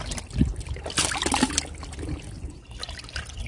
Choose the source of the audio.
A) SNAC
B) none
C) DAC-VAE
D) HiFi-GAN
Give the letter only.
B